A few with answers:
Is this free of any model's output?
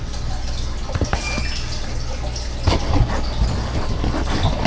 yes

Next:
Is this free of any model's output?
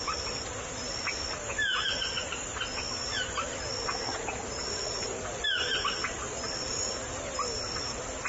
yes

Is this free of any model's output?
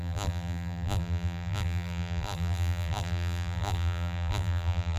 no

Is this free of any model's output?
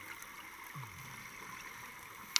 yes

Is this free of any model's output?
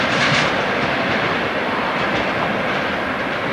no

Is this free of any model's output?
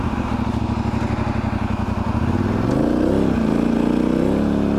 yes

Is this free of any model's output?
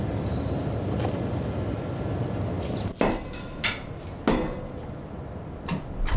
yes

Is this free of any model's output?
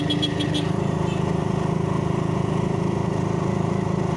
yes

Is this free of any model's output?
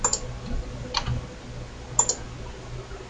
yes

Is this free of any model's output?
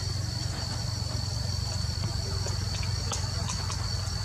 yes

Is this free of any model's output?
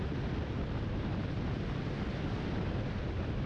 yes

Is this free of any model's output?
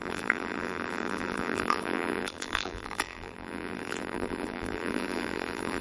no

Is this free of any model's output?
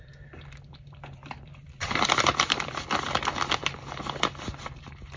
no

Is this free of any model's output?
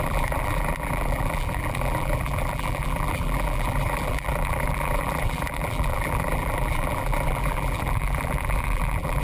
no